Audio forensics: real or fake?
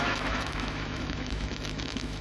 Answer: fake